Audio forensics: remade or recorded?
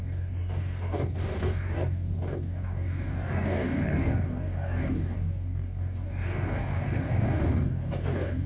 remade